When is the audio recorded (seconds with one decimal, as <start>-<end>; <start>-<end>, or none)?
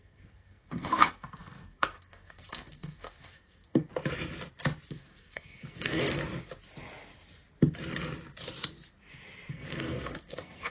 3.9-4.9; 6.2-9.5